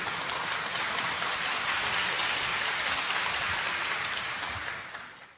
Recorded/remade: recorded